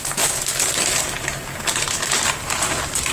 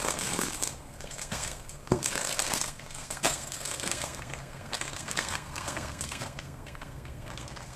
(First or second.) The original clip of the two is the first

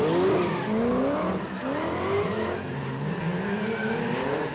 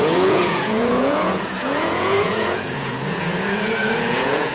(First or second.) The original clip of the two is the first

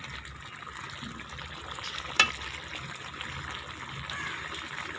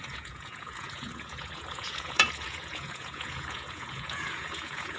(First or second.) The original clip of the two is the first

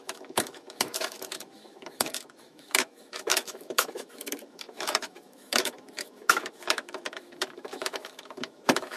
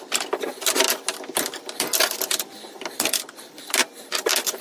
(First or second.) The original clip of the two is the second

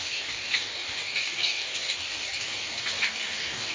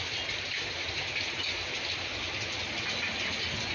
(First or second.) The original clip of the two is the second